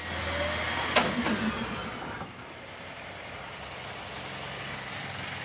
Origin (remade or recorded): recorded